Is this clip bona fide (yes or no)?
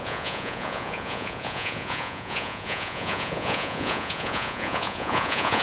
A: no